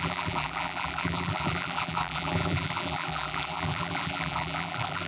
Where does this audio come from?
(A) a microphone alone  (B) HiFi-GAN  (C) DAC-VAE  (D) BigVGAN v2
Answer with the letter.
D